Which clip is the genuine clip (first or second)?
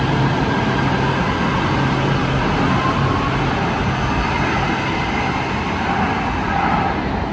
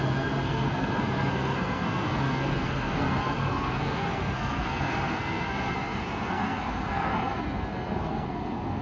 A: first